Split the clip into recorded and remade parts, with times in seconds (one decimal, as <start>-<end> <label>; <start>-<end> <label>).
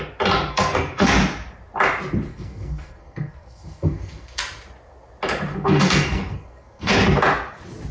0.0-0.5 recorded; 0.5-1.1 remade; 1.1-2.3 recorded; 2.3-4.4 remade; 4.4-5.5 recorded; 5.5-6.9 remade; 6.9-7.9 recorded